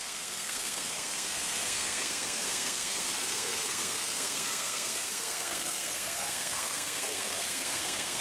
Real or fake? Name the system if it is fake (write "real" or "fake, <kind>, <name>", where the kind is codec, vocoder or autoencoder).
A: fake, codec, SNAC